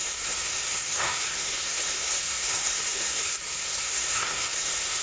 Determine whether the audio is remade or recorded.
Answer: remade